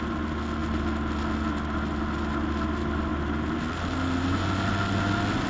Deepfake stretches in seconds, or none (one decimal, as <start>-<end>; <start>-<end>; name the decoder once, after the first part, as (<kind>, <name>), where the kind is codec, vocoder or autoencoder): none